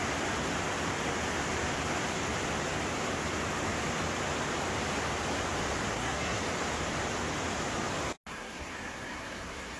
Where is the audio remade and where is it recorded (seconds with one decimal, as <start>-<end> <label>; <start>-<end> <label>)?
0.0-5.9 recorded; 5.9-6.4 remade; 6.4-8.3 recorded; 8.3-9.8 remade